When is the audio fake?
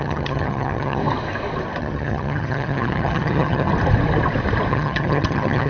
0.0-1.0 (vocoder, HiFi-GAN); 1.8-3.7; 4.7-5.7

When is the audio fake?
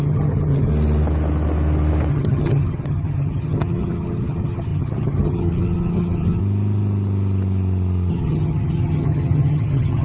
0.0-0.7 (vocoder, HiFi-GAN); 2.1-6.4; 8.1-10.0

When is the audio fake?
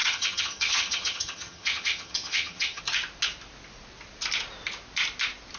0.0-2.8 (vocoder, HiFi-GAN)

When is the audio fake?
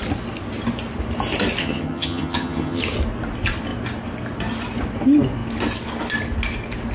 1.6-2.8 (vocoder, HiFi-GAN)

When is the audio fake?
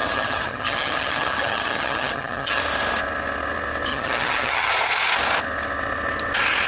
0.0-2.6 (vocoder, HiFi-GAN); 3.9-4.7